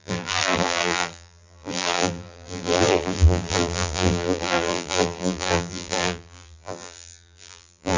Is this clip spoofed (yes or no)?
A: yes